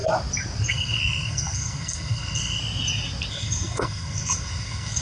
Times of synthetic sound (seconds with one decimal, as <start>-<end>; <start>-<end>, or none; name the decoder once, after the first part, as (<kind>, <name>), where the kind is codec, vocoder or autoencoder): 0.7-2.6 (codec, SNAC); 3.3-5.0